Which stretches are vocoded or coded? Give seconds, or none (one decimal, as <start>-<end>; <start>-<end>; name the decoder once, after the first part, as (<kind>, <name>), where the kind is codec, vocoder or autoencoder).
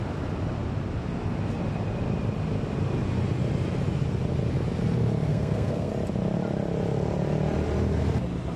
5.3-5.9 (codec, SNAC)